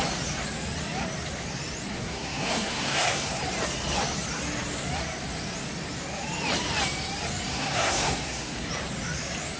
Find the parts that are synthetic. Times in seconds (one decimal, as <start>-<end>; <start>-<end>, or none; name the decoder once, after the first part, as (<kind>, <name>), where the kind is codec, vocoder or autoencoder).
1.9-3.4 (codec, SNAC); 7.5-8.7